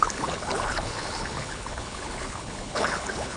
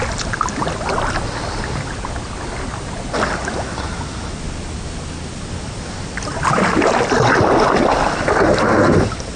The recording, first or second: second